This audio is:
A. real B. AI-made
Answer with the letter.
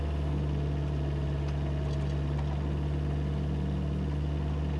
A